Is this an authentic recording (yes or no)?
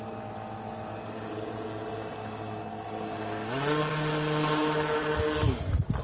yes